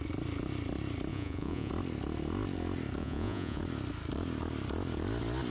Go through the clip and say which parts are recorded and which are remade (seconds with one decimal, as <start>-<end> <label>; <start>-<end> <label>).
0.0-1.1 recorded; 1.1-1.7 remade; 1.7-3.0 recorded; 3.0-3.6 remade; 3.6-5.5 recorded